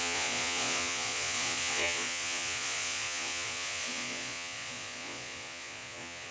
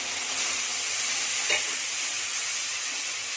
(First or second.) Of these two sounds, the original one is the second